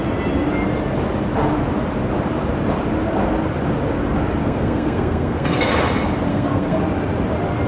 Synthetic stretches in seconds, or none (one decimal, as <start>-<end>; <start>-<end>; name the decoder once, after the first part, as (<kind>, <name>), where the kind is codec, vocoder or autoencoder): 4.4-5.6 (codec, SNAC); 6.3-6.8